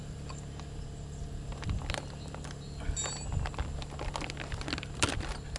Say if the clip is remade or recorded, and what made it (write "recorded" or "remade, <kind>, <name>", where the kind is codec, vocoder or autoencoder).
recorded